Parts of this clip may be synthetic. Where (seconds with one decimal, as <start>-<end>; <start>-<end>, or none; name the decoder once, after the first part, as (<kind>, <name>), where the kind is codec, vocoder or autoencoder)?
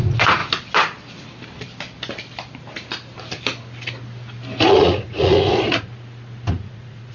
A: 0.0-0.4 (vocoder, Vocos); 4.7-5.9; 6.5-7.1